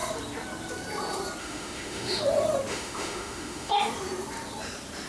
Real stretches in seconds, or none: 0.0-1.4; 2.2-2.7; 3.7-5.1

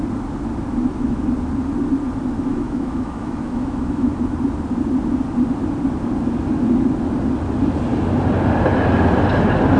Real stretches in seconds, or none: 0.0-2.5; 4.1-9.8

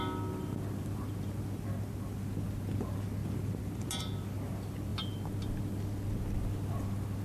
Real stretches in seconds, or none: 0.0-7.2

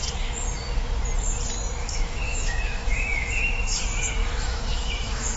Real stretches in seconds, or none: 0.0-1.8; 3.8-4.2

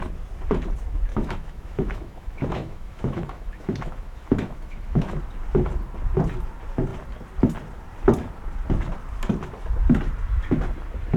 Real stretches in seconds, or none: 0.0-1.1; 5.2-11.2

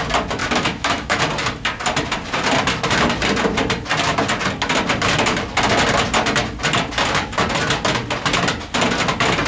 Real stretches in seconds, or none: 0.0-0.4; 1.2-9.5